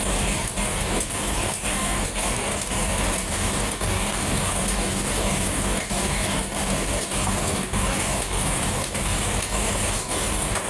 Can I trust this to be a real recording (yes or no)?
no